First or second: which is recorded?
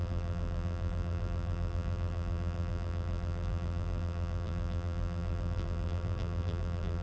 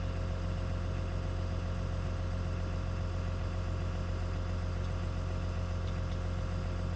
second